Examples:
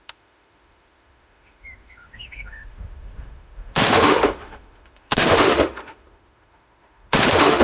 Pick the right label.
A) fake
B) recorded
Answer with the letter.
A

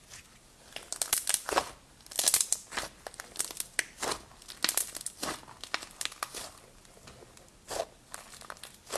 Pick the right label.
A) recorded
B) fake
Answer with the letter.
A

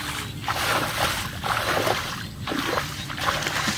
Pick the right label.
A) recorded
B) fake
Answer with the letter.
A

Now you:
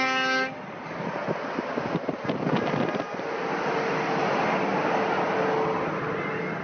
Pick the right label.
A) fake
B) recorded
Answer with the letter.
B